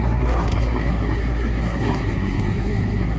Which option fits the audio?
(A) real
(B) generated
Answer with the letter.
B